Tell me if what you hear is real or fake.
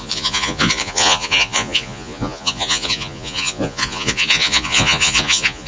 fake